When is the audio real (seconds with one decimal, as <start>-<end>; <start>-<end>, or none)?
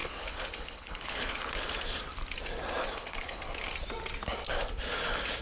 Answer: 1.5-2.8; 3.4-5.4